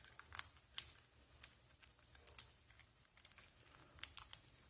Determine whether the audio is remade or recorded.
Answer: recorded